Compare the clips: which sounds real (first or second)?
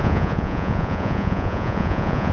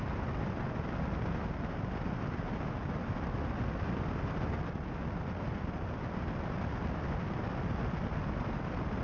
second